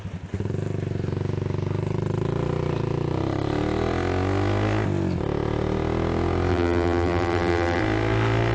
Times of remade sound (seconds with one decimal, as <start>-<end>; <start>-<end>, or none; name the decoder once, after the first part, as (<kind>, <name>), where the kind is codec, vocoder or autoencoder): 6.5-7.8 (vocoder, BigVGAN v2)